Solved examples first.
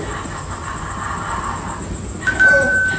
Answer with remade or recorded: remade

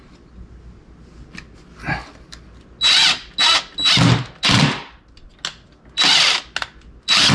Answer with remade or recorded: recorded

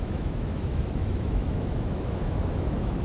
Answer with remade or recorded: remade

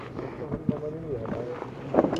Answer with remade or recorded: recorded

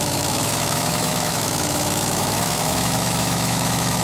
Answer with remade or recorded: remade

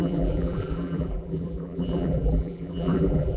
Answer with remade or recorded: remade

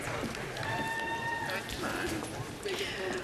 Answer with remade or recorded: recorded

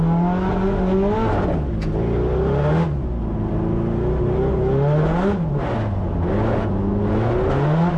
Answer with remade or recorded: recorded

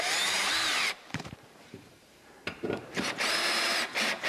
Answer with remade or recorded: remade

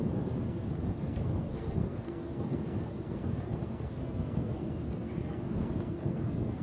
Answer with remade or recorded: remade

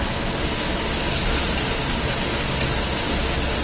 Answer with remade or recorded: recorded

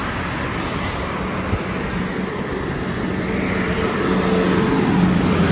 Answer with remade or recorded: recorded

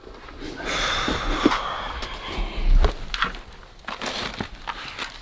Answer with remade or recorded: recorded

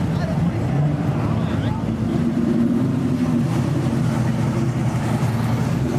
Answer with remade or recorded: recorded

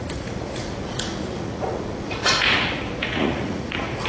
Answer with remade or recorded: remade